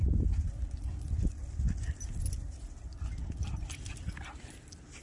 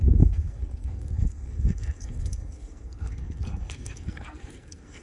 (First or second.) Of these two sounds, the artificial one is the second